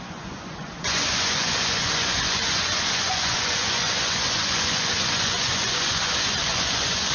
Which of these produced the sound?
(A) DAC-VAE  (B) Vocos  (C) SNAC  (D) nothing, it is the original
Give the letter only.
B